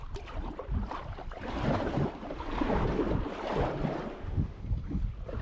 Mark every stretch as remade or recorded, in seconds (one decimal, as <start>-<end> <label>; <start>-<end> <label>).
0.0-4.1 recorded; 4.1-4.6 remade; 4.6-5.4 recorded